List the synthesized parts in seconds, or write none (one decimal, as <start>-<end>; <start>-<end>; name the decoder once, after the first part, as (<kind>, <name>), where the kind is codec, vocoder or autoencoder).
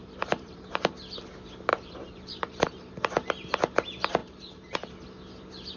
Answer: 0.0-0.9 (vocoder, BigVGAN v2); 1.7-2.9; 4.2-4.9